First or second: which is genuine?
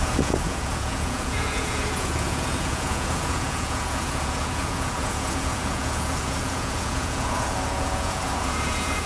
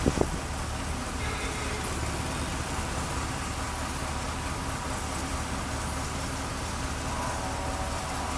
second